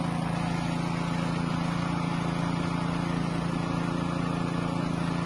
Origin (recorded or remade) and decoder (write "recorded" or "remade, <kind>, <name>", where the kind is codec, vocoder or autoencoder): recorded